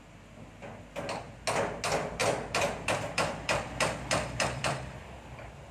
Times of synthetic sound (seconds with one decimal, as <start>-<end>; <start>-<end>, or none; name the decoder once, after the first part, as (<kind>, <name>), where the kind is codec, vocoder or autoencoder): 2.2-5.0 (vocoder, BigVGAN v2)